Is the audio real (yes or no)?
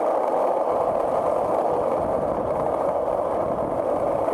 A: yes